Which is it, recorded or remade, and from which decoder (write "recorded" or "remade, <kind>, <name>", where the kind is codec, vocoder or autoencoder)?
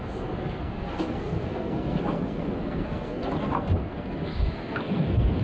remade, codec, SNAC